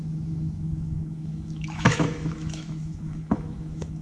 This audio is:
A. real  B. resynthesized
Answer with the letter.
B